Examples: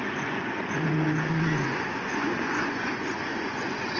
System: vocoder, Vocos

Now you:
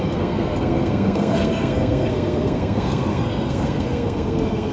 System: codec, SNAC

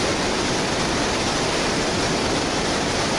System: none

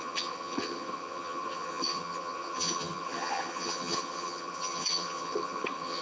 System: vocoder, HiFi-GAN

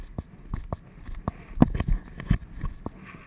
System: none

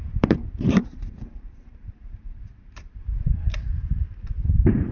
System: vocoder, BigVGAN v2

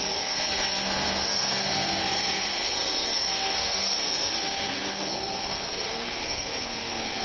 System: codec, SNAC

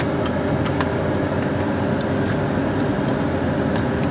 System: none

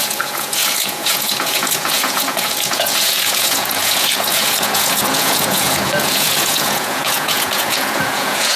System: vocoder, Vocos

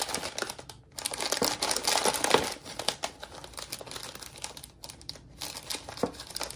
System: none